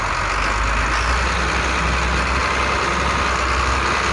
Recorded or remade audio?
recorded